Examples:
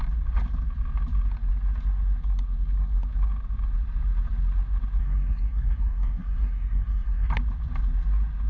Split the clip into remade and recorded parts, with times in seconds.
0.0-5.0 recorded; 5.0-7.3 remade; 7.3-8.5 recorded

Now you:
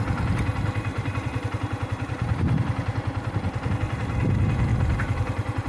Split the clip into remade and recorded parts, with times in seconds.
0.0-0.9 recorded; 0.9-3.7 remade; 3.7-4.7 recorded; 4.7-5.7 remade